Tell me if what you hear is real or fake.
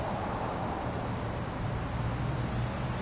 real